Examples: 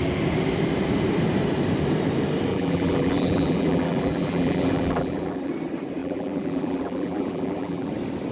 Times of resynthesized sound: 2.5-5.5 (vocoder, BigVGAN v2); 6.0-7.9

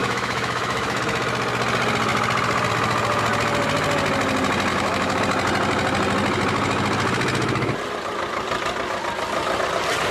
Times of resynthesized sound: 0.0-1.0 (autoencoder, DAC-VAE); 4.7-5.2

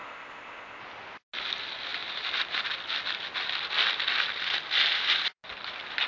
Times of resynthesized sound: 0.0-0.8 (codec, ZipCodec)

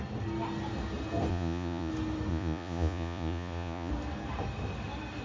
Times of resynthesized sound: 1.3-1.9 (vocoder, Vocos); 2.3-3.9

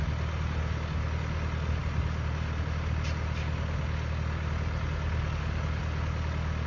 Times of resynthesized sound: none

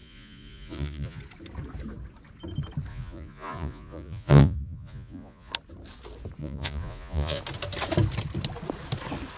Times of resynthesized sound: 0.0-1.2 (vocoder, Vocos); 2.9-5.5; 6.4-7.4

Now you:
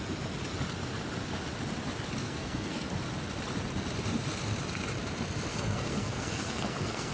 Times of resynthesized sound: 2.2-2.9 (codec, SNAC); 5.5-7.1

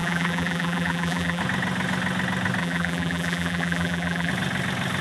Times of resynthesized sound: 0.0-1.4 (vocoder, BigVGAN v2); 2.6-4.3